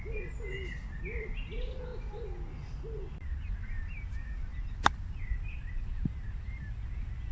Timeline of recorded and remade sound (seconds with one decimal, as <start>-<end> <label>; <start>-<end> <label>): 0.0-7.3 recorded